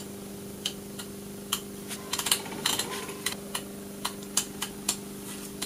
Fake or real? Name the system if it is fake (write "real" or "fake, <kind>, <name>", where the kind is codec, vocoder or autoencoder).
real